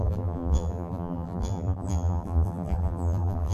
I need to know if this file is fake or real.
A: fake